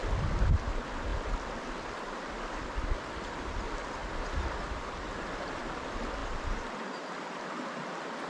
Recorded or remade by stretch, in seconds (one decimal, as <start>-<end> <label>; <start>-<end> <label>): 0.0-8.3 recorded